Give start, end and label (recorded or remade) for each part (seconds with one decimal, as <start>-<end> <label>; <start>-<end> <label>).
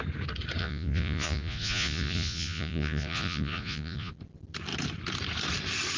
0.0-0.6 recorded; 0.6-4.1 remade; 4.1-6.0 recorded